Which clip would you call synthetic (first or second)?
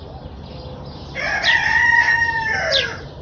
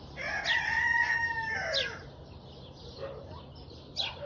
first